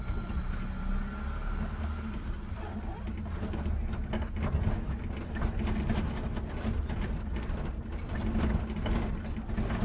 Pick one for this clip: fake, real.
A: real